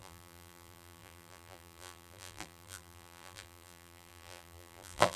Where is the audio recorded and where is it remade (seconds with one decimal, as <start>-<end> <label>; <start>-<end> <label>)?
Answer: 0.0-5.2 remade